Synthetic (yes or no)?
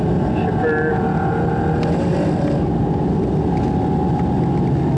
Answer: no